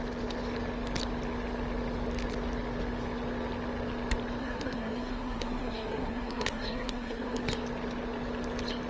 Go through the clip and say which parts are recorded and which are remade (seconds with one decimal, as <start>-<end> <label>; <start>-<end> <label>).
0.0-4.4 recorded; 4.4-7.4 remade; 7.4-8.9 recorded